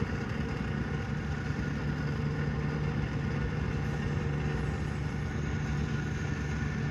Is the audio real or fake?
real